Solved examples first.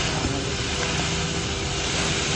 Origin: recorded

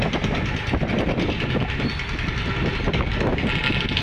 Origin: recorded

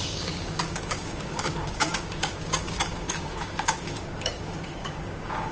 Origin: remade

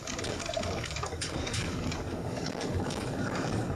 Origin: remade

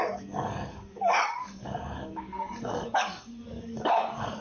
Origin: remade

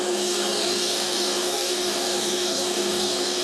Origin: remade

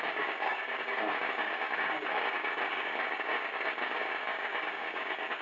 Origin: remade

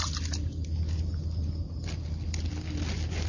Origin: recorded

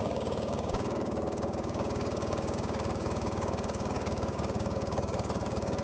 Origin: remade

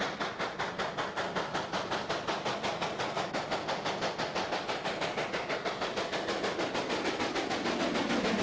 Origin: recorded